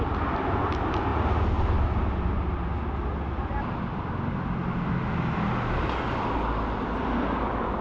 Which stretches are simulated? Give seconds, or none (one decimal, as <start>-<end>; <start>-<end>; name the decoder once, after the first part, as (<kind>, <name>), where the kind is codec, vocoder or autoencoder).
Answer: none